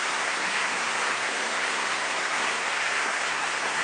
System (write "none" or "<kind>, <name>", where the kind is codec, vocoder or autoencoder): codec, SNAC